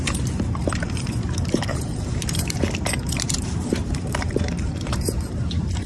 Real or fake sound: fake